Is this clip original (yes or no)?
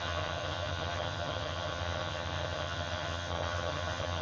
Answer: no